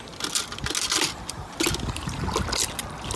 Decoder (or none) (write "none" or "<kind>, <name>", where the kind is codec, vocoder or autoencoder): none